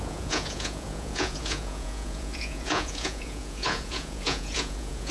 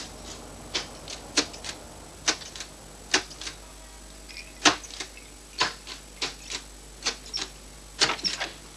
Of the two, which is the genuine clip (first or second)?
second